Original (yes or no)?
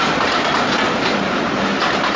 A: yes